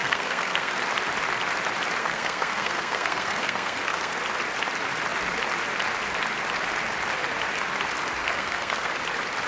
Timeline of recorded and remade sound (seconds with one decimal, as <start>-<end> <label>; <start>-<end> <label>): 0.0-0.7 remade; 0.7-2.0 recorded; 2.0-4.1 remade; 4.1-8.2 recorded; 8.2-8.9 remade; 8.9-9.5 recorded